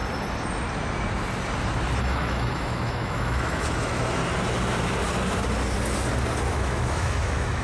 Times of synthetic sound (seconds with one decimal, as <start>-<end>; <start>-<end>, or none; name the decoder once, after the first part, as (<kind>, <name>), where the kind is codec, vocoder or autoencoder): 2.0-4.2 (autoencoder, DAC-VAE); 6.5-7.6